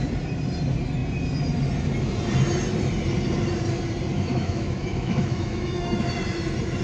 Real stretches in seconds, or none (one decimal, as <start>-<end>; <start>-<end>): 0.0-4.1; 6.0-6.8